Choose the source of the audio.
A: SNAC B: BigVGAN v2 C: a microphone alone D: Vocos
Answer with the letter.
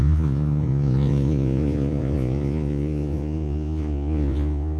D